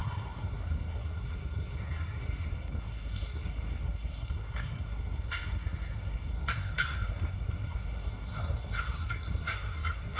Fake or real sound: fake